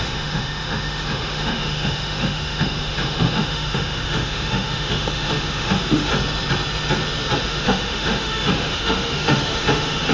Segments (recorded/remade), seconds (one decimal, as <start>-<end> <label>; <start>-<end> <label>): 0.0-6.1 remade; 6.1-7.4 recorded; 7.4-10.1 remade